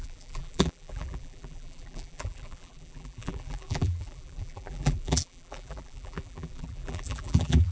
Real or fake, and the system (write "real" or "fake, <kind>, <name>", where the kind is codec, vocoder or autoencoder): fake, vocoder, BigVGAN v2